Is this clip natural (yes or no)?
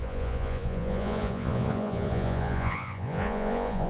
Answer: no